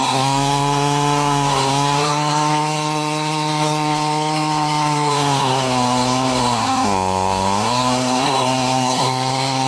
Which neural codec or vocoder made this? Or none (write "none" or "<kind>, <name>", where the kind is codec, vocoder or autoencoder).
codec, SNAC